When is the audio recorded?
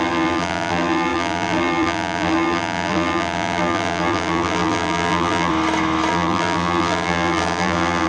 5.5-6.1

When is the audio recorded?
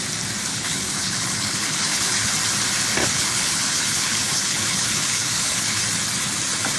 0.0-0.5; 2.3-3.0; 5.8-6.8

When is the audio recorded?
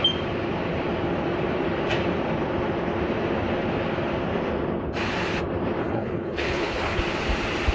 0.0-5.8; 7.0-7.7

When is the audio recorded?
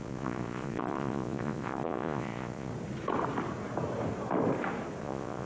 2.7-5.0